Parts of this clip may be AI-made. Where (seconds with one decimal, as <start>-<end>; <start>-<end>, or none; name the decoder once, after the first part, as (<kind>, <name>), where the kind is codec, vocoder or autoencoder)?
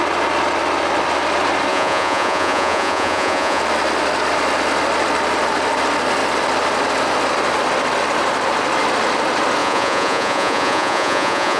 1.7-3.6 (vocoder, Vocos); 9.6-11.6